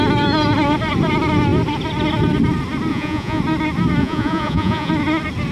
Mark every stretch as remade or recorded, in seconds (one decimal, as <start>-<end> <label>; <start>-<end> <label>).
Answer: 0.0-2.9 recorded; 2.9-3.4 remade; 3.4-4.0 recorded; 4.0-4.9 remade; 4.9-5.5 recorded